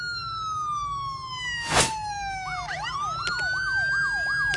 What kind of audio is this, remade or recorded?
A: recorded